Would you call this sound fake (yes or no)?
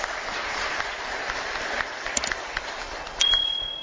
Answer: no